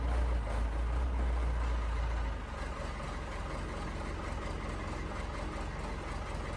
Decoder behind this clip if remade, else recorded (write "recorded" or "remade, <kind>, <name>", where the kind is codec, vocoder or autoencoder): recorded